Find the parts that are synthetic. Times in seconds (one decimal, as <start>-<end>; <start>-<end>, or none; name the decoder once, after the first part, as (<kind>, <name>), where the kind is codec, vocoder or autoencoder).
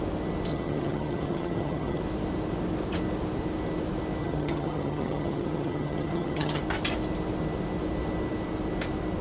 0.5-2.0 (vocoder, HiFi-GAN); 4.2-6.6